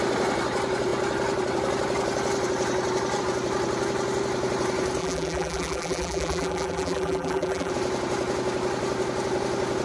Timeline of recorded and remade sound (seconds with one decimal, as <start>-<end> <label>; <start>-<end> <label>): 0.0-5.0 recorded; 5.0-7.7 remade; 7.7-9.8 recorded